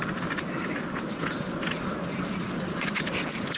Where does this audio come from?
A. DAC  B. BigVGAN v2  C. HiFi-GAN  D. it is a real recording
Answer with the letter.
D